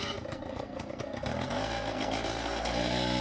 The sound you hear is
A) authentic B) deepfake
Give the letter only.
B